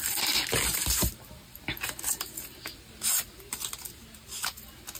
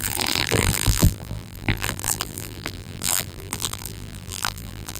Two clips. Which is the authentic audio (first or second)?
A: first